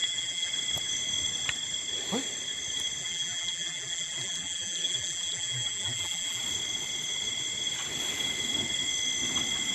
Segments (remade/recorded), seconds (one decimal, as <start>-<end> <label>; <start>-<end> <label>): 0.0-0.5 remade; 0.5-3.0 recorded; 3.0-6.4 remade; 6.4-9.7 recorded